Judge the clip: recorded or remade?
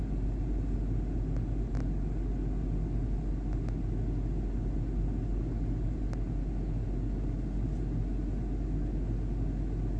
recorded